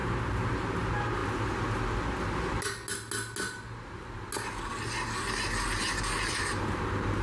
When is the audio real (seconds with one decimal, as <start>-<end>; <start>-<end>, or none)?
0.7-7.2